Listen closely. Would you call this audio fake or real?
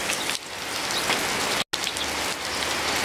real